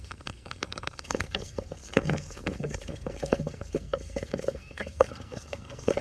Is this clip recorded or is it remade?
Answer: remade